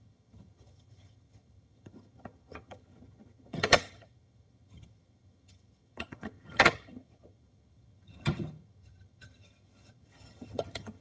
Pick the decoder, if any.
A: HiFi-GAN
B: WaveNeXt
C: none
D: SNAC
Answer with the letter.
A